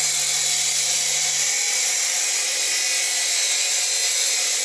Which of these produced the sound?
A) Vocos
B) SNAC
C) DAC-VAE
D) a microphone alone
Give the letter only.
D